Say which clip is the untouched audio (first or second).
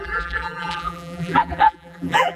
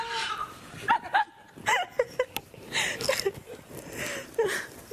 second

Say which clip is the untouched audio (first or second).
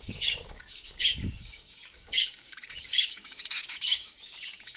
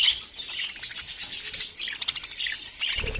second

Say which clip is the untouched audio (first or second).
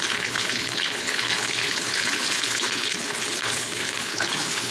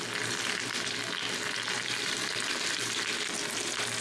second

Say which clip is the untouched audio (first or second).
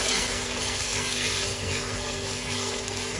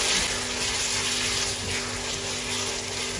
second